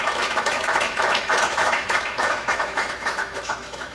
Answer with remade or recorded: remade